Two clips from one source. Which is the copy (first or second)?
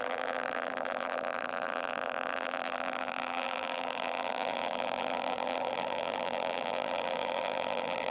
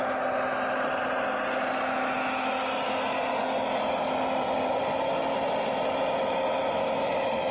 first